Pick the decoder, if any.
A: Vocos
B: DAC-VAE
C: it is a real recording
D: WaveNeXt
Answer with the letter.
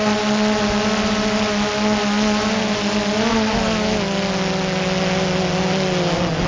C